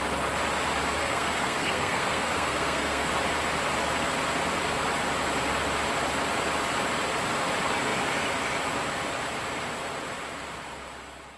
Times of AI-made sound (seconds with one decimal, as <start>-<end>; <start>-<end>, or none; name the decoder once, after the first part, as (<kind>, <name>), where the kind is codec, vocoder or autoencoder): 1.0-3.1 (codec, SNAC)